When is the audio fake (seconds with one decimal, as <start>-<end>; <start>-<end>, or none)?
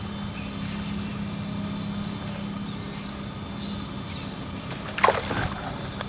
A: none